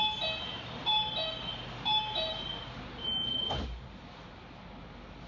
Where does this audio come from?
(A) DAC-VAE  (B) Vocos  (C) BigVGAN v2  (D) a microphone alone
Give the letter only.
D